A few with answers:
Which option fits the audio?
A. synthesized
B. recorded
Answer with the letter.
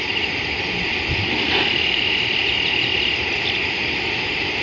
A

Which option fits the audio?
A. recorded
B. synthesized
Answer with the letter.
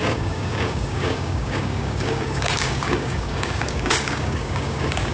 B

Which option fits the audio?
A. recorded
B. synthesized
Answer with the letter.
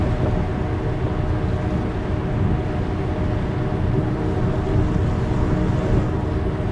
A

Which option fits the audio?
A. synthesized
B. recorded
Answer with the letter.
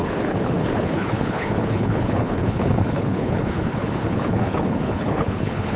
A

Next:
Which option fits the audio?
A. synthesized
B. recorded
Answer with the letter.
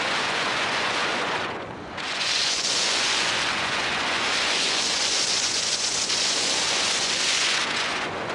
A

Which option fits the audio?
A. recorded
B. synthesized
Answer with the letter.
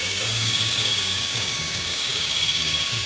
B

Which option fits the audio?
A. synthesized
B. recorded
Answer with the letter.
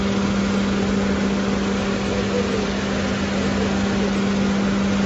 B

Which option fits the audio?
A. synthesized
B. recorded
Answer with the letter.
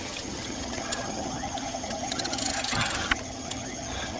A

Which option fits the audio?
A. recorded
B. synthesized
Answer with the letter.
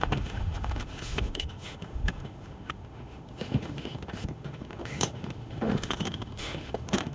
B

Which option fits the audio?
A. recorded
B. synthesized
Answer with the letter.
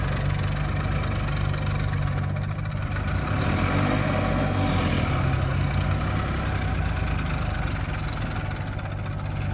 A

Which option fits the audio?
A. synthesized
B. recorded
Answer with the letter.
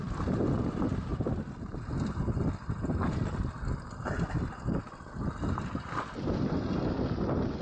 B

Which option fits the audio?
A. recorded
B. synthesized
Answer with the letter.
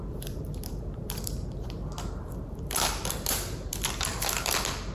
B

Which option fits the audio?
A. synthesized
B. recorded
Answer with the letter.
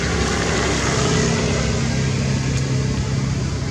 B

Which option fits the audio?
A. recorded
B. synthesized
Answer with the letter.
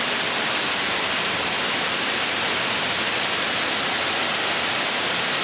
A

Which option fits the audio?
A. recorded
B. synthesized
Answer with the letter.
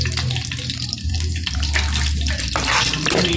A